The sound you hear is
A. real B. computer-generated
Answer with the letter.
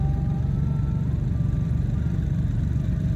A